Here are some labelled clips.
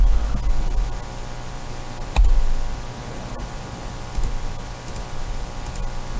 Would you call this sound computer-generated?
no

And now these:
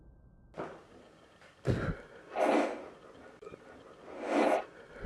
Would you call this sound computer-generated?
no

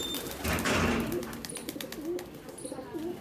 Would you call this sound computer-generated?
no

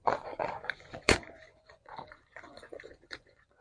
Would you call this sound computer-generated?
yes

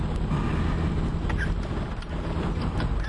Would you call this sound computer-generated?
no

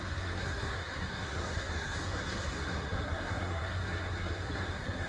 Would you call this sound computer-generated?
yes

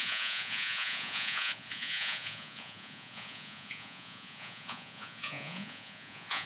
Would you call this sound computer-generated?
yes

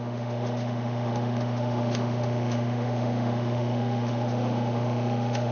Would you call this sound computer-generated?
yes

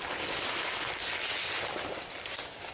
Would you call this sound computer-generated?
no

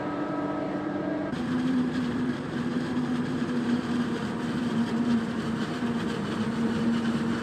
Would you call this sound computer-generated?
yes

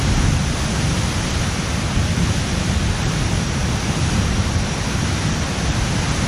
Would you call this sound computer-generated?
no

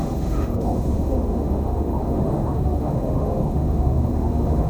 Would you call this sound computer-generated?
yes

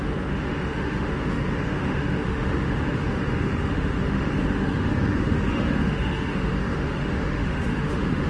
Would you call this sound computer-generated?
yes